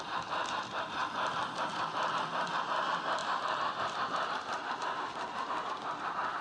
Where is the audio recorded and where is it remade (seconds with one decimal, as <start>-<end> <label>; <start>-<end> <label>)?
0.0-3.2 recorded; 3.2-6.4 remade